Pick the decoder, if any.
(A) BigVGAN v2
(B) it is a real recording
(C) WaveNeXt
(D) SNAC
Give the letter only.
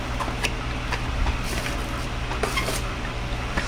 B